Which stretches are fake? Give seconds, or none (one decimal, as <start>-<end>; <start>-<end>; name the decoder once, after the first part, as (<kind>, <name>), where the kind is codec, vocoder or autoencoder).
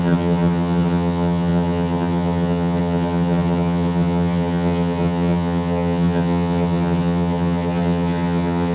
0.0-8.7 (vocoder, HiFi-GAN)